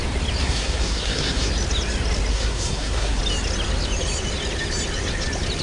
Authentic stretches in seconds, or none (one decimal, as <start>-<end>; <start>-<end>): 0.0-0.4; 1.5-2.3; 3.2-5.6